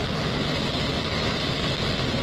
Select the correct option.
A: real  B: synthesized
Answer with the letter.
A